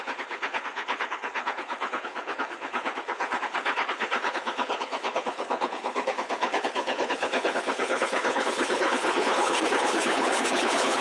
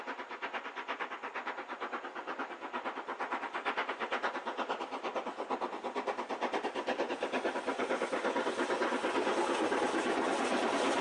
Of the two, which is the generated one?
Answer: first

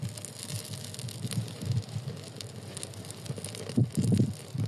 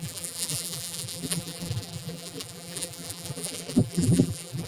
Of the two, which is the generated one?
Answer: second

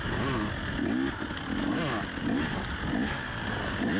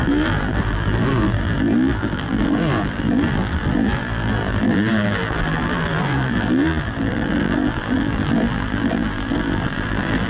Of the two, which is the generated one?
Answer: second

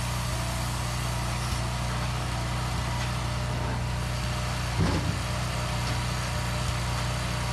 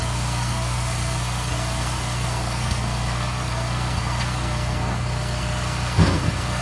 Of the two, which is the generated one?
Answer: second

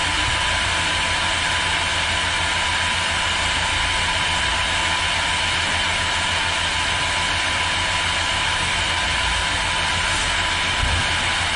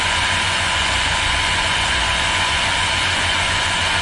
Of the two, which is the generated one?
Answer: second